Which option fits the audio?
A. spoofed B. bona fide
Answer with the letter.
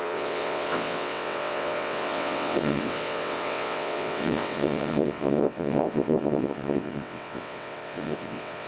A